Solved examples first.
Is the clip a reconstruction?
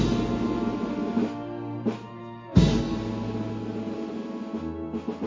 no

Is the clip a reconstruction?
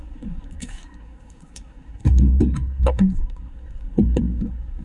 yes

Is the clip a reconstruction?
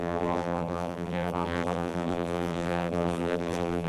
yes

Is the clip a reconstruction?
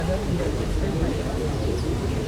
no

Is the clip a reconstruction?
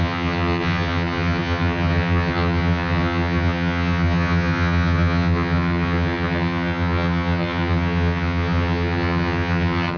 yes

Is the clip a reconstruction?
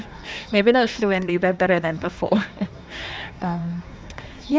yes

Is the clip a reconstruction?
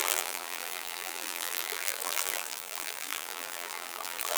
yes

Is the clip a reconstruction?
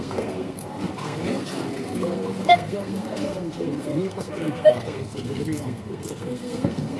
yes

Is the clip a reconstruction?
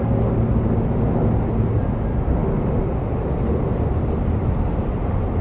no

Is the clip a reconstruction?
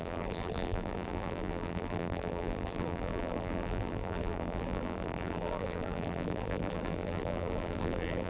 yes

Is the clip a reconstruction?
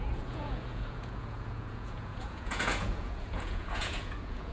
yes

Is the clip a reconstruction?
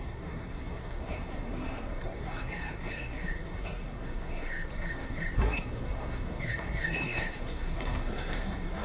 yes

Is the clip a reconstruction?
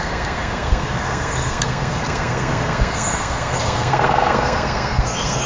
yes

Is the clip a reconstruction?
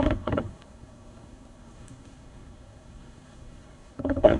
yes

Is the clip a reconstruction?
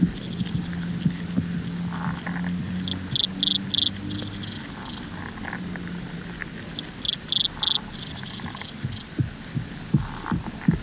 no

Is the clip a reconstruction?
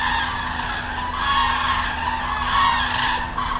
no